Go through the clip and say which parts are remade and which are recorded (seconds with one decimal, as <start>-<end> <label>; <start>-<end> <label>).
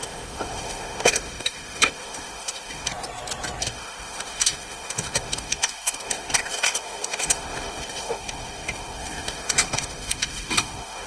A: 0.0-2.9 remade; 2.9-3.6 recorded; 3.6-11.1 remade